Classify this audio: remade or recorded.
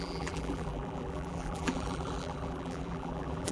remade